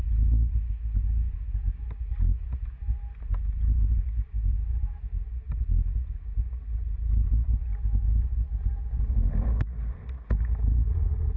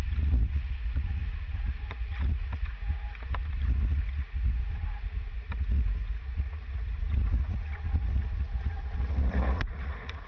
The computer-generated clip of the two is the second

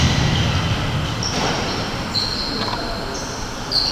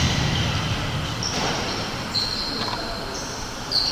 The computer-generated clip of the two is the second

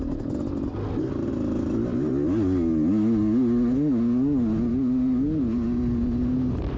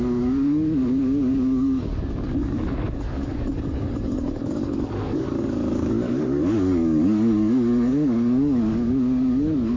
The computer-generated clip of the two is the second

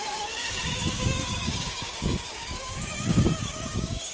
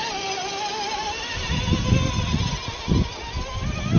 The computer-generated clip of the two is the first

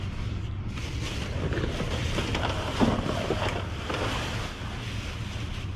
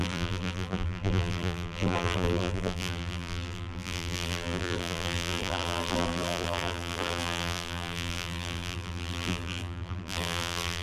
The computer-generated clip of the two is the second